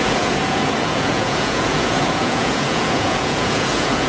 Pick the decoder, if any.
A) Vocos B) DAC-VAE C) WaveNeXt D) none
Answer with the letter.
A